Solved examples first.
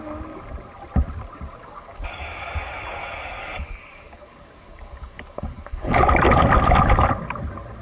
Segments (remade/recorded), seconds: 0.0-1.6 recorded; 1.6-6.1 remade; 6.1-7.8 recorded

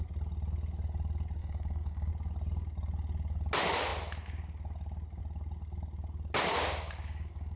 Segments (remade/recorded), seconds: 0.0-1.4 recorded; 1.4-2.1 remade; 2.1-6.5 recorded; 6.5-7.6 remade